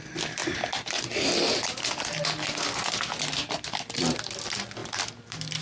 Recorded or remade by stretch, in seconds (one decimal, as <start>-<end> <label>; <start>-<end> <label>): 0.0-4.8 recorded; 4.8-5.6 remade